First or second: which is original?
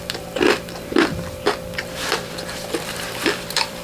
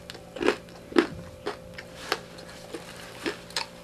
second